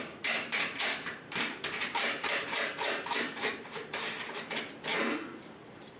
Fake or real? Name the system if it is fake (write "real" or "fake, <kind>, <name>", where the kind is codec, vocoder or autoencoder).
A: fake, vocoder, BigVGAN v2